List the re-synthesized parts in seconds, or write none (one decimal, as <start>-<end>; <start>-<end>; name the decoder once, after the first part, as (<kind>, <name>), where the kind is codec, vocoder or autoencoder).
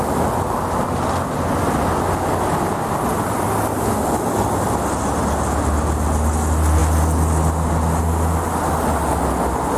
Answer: none